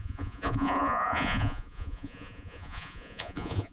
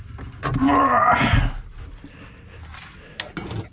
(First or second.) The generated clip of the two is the first